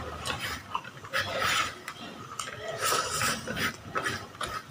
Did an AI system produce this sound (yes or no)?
no